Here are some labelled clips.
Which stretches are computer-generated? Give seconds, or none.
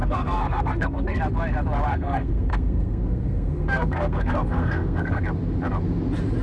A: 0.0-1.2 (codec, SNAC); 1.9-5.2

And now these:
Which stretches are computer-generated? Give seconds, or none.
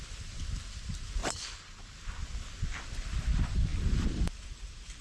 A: 0.0-1.2 (vocoder, BigVGAN v2); 2.8-5.0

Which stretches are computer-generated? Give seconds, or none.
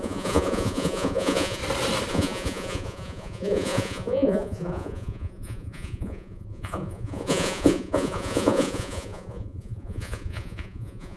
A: 0.0-1.6 (vocoder, Vocos); 2.1-11.2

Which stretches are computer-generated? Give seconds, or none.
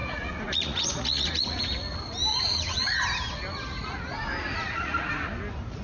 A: 0.0-1.6 (vocoder, Vocos); 2.3-3.0; 3.8-5.1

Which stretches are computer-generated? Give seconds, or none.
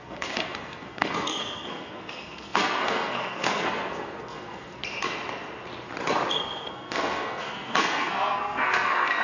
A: 0.0-4.8 (codec, SNAC); 6.3-9.2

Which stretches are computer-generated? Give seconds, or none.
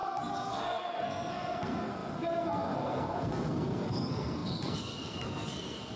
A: 0.0-6.0 (codec, SNAC)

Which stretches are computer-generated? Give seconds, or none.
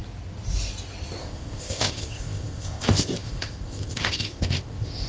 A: 1.2-5.1 (codec, ZipCodec)